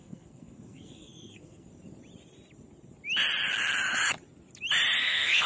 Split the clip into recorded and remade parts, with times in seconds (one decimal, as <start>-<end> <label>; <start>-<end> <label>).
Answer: 0.0-1.7 remade; 1.7-5.0 recorded; 5.0-5.5 remade